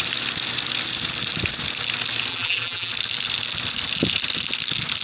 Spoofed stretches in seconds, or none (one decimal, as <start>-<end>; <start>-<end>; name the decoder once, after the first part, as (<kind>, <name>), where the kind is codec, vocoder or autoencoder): 2.3-2.9 (vocoder, BigVGAN v2)